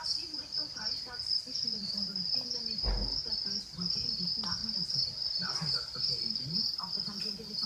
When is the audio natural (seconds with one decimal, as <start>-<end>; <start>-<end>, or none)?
0.0-7.7